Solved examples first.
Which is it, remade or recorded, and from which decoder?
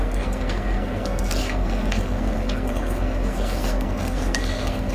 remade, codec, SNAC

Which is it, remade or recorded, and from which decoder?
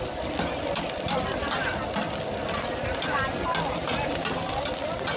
recorded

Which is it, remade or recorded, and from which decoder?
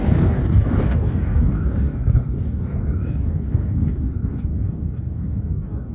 remade, codec, DAC